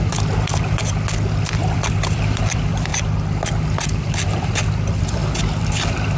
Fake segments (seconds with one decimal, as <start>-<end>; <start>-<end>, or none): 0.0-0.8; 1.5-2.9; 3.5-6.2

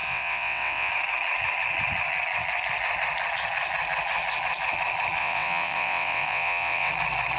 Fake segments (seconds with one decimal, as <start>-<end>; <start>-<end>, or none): 0.0-0.9; 5.2-6.9

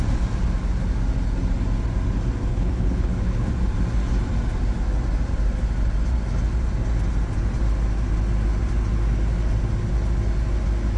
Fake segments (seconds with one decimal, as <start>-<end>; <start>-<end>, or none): 2.5-3.5

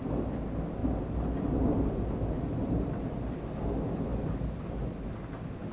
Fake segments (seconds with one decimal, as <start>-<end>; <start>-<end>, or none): none

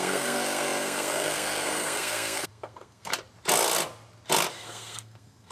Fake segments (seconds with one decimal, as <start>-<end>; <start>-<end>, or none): 0.0-3.1; 4.5-5.5

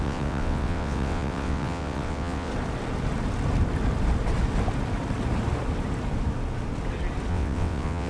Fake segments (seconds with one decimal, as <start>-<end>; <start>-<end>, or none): 0.0-2.5; 7.3-8.1

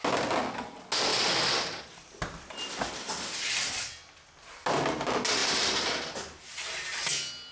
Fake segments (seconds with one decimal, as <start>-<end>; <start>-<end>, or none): none

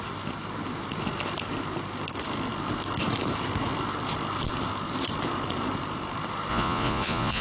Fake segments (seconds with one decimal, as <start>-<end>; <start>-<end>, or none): 6.5-7.4